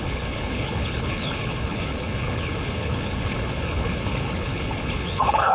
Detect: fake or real fake